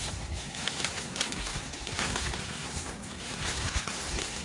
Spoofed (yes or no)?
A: yes